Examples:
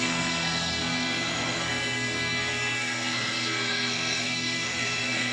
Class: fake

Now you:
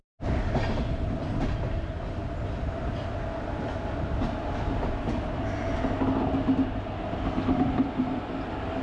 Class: real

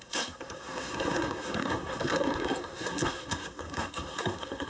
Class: fake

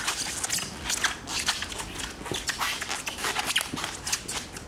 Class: real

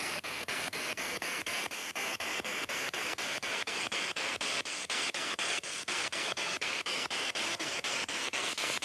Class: fake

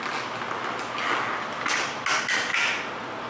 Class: real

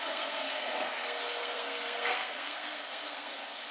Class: fake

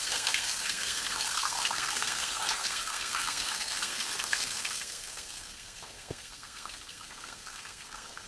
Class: fake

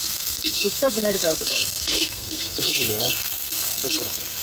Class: fake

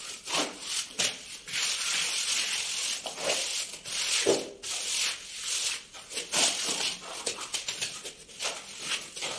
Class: real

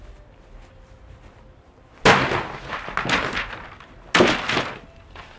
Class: real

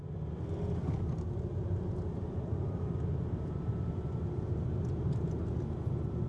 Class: real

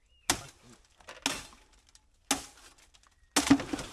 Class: real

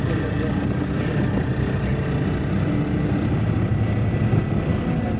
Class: real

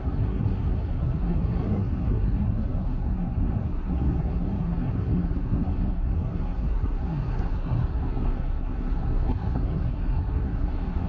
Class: fake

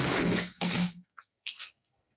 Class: fake